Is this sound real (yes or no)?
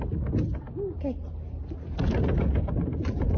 yes